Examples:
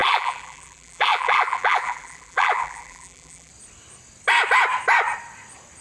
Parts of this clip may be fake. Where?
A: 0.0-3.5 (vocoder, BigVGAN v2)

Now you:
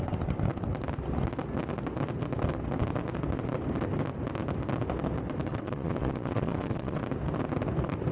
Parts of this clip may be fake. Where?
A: 5.5-7.0 (vocoder, Vocos)